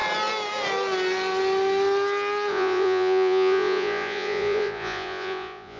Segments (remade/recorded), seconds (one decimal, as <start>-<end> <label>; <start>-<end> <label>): 0.0-2.5 recorded; 2.5-5.8 remade